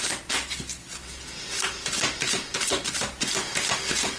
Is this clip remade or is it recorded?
remade